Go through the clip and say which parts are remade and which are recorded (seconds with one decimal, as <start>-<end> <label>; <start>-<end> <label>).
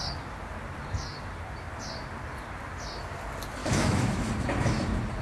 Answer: 0.0-3.6 recorded; 3.6-4.3 remade; 4.3-5.2 recorded